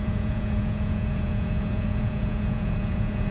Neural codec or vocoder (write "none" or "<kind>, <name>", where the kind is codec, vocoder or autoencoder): vocoder, Vocos